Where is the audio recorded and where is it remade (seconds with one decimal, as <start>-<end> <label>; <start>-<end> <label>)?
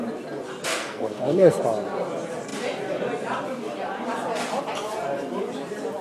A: 0.0-0.7 recorded; 0.7-1.6 remade; 1.6-6.0 recorded